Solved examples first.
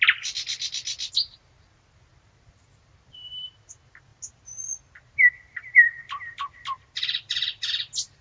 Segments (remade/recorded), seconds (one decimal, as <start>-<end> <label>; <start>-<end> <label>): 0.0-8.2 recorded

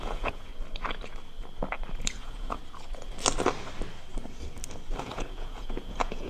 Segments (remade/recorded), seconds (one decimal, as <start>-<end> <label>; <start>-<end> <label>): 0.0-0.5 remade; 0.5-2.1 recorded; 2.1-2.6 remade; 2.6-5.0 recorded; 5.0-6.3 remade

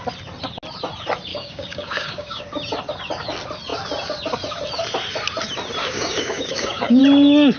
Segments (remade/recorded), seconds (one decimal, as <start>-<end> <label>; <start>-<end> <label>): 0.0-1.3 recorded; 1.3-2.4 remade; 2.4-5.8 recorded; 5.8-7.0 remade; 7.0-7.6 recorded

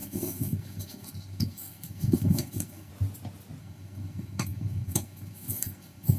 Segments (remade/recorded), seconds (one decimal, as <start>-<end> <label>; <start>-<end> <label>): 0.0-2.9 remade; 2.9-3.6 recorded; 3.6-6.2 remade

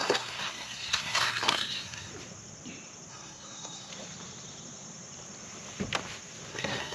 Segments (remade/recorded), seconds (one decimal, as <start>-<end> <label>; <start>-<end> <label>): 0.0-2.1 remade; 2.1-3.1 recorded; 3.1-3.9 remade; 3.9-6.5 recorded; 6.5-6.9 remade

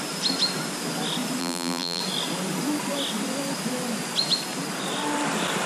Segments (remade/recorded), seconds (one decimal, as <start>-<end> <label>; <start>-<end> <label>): 0.0-1.4 recorded; 1.4-2.0 remade; 2.0-5.7 recorded

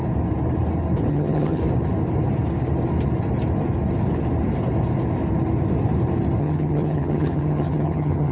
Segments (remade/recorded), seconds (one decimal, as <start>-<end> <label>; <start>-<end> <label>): 0.0-1.1 recorded; 1.1-1.6 remade; 1.6-6.4 recorded; 6.4-8.3 remade

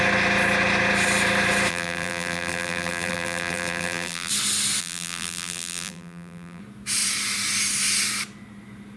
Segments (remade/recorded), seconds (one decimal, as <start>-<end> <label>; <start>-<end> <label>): 0.0-1.7 recorded; 1.7-4.3 remade; 4.3-4.8 recorded; 4.8-6.6 remade; 6.6-9.0 recorded